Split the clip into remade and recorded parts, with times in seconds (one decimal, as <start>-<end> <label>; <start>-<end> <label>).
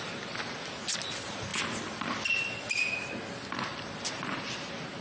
0.0-5.0 recorded